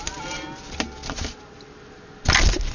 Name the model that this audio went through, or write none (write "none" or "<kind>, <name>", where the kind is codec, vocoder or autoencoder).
none